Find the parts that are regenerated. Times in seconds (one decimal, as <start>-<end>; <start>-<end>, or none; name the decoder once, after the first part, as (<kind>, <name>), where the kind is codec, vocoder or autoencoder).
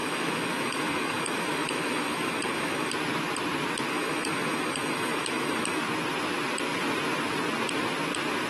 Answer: 0.0-2.9 (autoencoder, DAC-VAE); 3.9-5.8